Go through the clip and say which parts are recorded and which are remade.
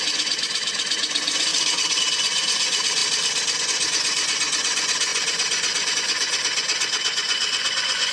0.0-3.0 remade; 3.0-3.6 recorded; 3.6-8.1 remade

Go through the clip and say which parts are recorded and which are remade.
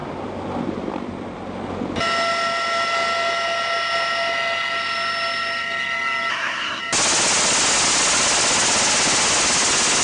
0.0-6.3 recorded; 6.3-6.8 remade; 6.8-10.0 recorded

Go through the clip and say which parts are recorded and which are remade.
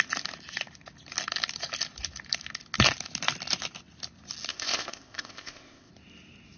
0.0-4.5 recorded; 4.5-5.9 remade; 5.9-6.6 recorded